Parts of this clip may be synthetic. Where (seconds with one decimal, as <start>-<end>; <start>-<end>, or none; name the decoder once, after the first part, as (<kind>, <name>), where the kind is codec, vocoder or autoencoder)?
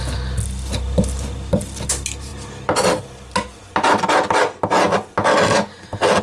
none